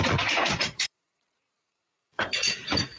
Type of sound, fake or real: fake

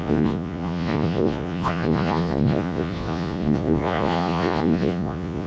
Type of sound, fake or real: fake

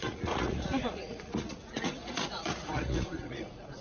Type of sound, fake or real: fake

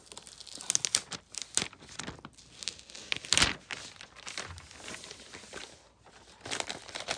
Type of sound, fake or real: real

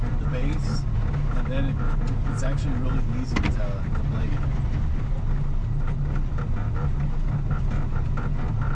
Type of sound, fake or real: real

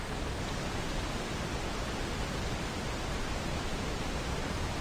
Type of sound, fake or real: real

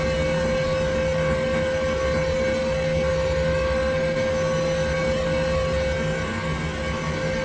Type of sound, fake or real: real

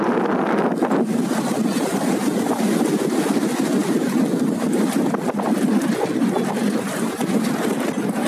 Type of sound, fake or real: real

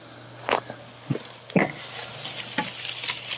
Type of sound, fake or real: real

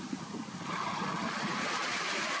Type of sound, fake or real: real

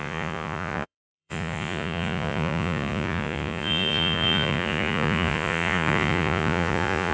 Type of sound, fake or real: fake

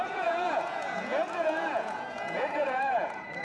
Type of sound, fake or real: fake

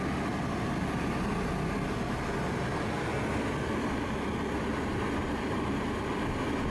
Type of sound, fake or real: real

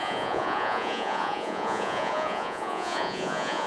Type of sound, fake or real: fake